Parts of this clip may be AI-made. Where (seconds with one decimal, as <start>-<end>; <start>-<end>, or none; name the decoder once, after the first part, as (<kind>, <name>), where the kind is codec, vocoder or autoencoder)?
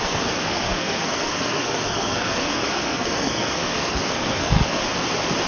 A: 0.0-4.8 (codec, SNAC)